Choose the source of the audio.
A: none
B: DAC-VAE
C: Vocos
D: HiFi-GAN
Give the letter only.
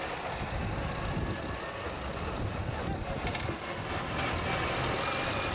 A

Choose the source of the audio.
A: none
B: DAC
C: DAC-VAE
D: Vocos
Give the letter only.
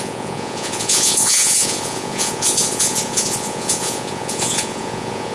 D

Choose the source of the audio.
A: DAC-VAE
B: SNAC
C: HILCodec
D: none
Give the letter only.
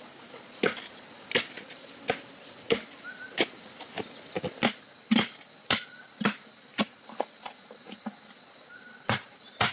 D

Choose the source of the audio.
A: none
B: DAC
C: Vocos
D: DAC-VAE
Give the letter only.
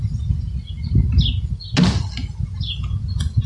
A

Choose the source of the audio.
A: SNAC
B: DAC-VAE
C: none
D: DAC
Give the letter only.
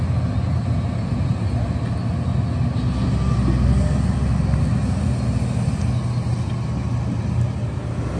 C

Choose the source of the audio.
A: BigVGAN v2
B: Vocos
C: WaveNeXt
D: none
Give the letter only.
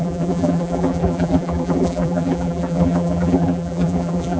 A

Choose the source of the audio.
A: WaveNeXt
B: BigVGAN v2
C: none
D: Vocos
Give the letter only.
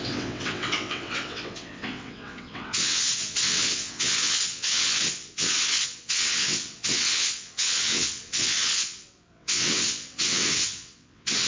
A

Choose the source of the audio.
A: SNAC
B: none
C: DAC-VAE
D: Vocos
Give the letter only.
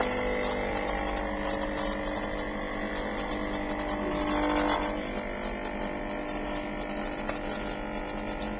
B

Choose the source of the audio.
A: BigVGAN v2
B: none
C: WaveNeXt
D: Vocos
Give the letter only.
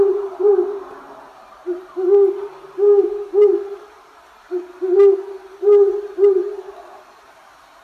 A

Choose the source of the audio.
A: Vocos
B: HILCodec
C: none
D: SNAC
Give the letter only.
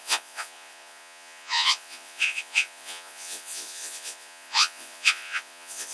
A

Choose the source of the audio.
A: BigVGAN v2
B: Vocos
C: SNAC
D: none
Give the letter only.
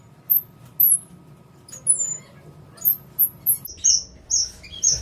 D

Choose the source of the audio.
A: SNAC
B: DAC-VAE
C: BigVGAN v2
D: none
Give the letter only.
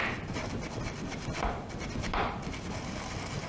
D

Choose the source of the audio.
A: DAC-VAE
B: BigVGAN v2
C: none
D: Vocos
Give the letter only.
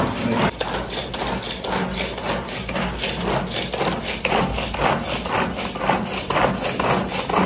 C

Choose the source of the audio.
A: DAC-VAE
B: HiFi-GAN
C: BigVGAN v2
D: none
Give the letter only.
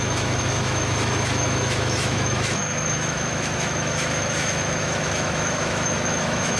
A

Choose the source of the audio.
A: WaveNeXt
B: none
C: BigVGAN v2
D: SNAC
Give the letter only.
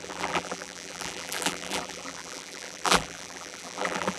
C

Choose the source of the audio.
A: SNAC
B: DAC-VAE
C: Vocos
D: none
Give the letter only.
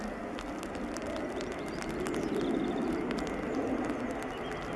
D